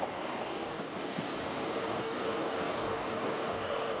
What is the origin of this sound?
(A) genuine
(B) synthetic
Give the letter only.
B